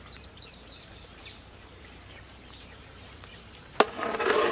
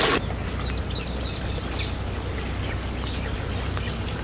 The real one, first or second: second